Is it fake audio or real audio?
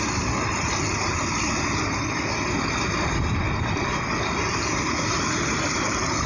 real